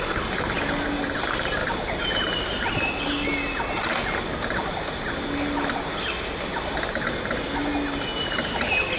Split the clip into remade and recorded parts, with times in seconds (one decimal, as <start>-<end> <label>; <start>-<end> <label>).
0.0-9.0 recorded